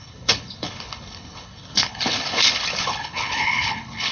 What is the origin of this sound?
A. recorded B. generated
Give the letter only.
B